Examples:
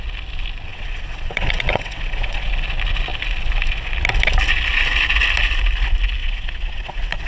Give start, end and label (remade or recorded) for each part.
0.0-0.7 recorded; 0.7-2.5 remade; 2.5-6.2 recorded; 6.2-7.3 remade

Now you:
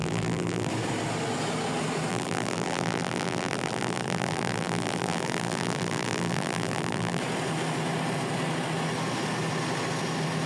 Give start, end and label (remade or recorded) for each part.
0.0-0.7 remade; 0.7-2.1 recorded; 2.1-7.2 remade; 7.2-10.5 recorded

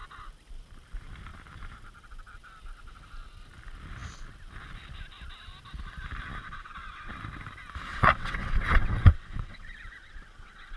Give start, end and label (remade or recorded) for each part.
0.0-6.4 recorded; 6.4-7.1 remade; 7.1-7.9 recorded; 7.9-10.8 remade

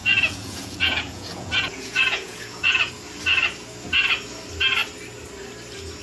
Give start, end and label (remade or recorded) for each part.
0.0-2.9 remade; 2.9-6.0 recorded

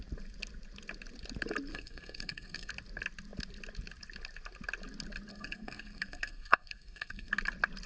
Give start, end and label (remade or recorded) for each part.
0.0-1.7 recorded; 1.7-2.7 remade; 2.7-5.3 recorded; 5.3-7.3 remade; 7.3-7.9 recorded